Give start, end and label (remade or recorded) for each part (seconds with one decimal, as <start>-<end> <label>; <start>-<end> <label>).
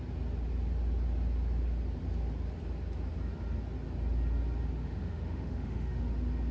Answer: 0.0-4.8 recorded; 4.8-6.1 remade; 6.1-6.5 recorded